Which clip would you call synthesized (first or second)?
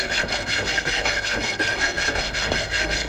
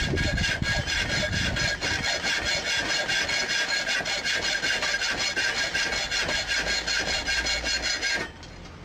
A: first